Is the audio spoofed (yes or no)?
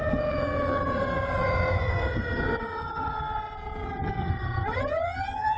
yes